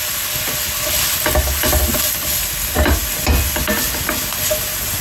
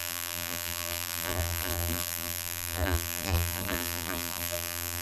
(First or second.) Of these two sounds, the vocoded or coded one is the second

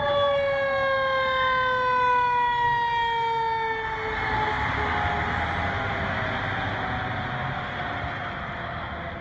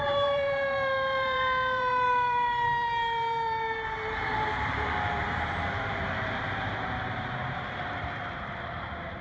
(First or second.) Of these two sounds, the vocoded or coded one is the second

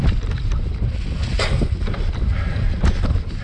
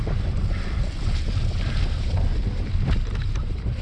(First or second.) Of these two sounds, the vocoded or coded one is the first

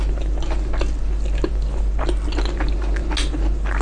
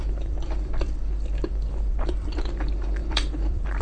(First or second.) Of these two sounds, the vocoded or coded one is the second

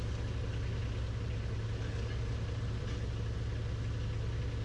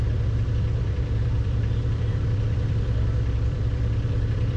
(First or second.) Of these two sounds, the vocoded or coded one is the second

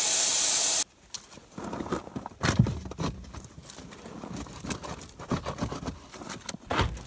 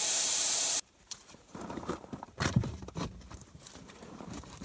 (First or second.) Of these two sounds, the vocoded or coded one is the second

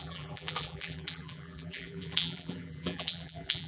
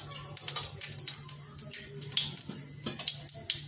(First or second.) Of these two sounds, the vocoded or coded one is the first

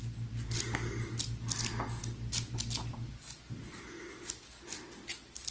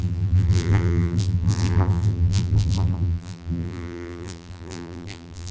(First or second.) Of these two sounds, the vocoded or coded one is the second